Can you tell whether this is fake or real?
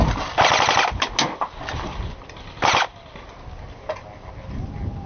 real